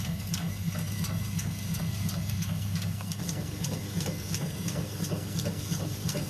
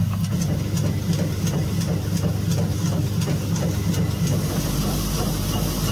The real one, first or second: second